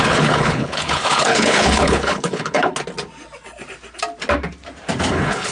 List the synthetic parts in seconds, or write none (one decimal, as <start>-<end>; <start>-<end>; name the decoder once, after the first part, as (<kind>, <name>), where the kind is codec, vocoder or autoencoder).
0.0-2.7 (codec, HILCodec); 5.1-5.5